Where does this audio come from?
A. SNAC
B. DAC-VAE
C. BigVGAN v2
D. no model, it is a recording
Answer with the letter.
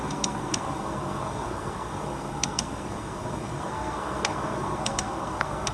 A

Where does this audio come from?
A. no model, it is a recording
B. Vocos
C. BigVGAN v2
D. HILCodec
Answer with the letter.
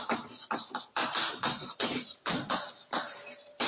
C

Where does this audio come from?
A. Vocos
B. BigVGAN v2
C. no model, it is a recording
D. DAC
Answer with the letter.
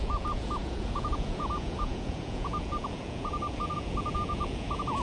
A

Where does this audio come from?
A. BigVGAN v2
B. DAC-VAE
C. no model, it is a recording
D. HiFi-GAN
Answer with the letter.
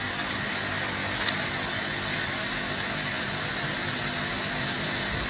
C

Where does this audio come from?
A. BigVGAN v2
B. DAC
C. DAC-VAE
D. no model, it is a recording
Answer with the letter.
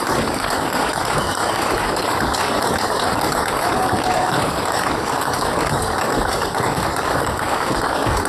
B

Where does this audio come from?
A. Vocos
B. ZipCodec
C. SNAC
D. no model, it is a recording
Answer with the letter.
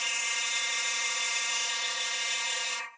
B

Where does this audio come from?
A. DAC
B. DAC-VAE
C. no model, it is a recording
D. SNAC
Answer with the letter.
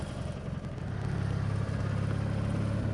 C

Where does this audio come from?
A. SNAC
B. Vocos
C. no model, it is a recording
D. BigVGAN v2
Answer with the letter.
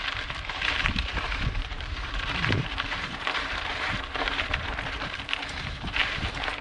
D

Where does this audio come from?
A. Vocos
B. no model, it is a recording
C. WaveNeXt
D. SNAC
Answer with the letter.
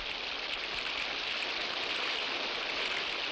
B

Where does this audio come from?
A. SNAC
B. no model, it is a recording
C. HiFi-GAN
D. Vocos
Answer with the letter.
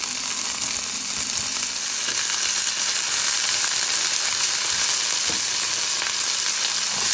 B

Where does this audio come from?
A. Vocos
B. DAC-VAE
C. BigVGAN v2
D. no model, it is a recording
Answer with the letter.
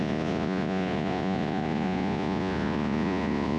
A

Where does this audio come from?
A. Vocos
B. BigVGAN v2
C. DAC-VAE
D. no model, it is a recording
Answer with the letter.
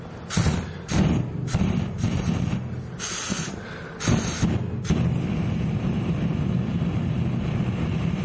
D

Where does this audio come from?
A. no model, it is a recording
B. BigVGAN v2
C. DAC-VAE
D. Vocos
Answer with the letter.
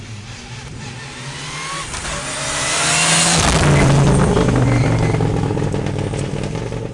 A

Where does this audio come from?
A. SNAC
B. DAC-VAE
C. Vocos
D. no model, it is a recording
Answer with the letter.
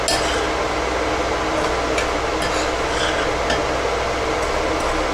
D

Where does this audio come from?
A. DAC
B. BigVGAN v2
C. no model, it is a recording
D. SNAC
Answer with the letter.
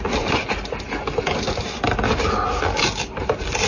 C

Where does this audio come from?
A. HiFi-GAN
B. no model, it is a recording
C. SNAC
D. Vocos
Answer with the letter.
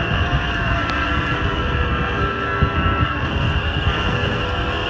C